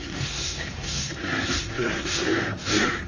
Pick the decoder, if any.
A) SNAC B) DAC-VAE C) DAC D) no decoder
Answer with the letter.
A